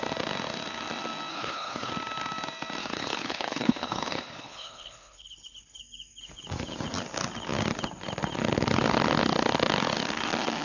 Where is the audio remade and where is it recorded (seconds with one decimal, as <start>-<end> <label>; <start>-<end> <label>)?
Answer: 0.0-1.3 recorded; 1.3-1.9 remade; 1.9-2.8 recorded; 2.8-5.8 remade; 5.8-10.6 recorded